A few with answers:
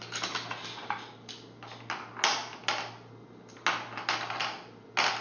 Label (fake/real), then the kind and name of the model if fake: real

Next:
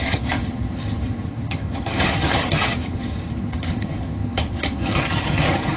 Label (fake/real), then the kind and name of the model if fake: fake, vocoder, HiFi-GAN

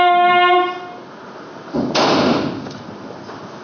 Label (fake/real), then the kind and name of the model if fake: real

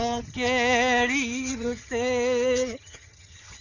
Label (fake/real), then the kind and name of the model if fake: fake, vocoder, HiFi-GAN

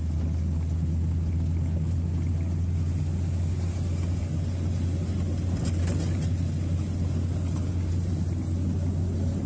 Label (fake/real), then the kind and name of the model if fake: real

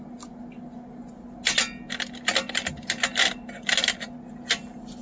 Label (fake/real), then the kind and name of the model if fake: real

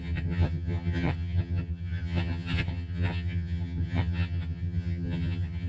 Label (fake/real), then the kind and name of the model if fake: fake, vocoder, HiFi-GAN